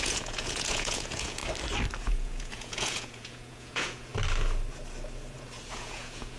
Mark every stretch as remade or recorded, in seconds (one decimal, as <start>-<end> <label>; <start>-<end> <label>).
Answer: 0.0-1.4 remade; 1.4-2.0 recorded; 2.0-4.1 remade; 4.1-5.7 recorded; 5.7-6.4 remade

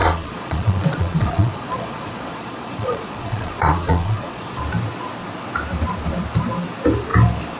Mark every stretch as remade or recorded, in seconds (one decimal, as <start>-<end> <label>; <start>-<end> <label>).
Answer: 0.0-4.6 remade; 4.6-7.6 recorded

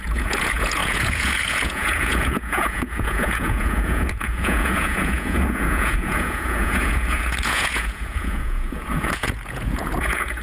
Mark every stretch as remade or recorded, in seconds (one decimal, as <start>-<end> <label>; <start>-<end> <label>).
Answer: 0.0-10.4 remade

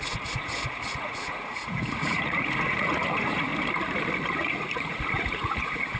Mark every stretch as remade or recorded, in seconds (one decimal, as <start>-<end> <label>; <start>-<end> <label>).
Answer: 0.0-3.5 remade; 3.5-4.3 recorded; 4.3-6.0 remade

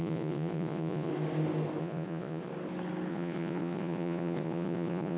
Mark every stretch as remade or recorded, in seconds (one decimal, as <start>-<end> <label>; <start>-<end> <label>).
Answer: 0.0-1.1 remade; 1.1-1.8 recorded; 1.8-2.5 remade; 2.5-3.1 recorded; 3.1-5.2 remade